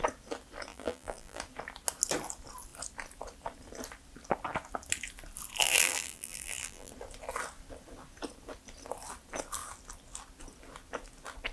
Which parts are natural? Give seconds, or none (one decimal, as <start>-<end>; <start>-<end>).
0.0-0.7; 1.4-5.6; 6.9-11.5